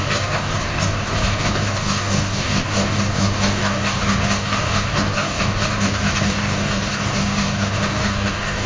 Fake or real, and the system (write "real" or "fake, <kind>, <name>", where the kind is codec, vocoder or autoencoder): fake, codec, DAC